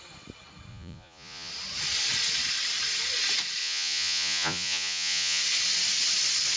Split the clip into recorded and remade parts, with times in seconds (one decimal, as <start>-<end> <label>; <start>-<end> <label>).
0.0-0.7 recorded; 0.7-1.5 remade; 1.5-3.6 recorded; 3.6-5.4 remade; 5.4-6.6 recorded